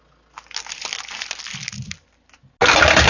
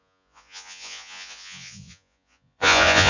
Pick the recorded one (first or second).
first